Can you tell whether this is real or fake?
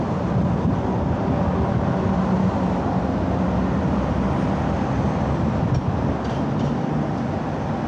real